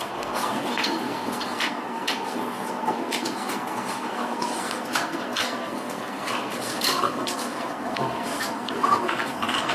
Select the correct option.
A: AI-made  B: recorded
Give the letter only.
A